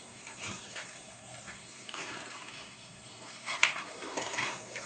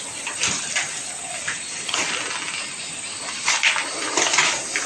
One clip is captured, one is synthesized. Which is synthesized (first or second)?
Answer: first